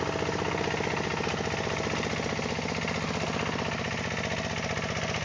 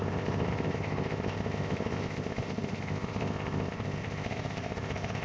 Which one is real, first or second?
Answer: first